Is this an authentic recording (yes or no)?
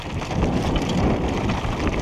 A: yes